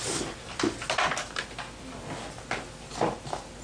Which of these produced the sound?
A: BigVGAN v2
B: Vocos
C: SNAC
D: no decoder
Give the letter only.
D